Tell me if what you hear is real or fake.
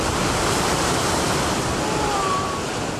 real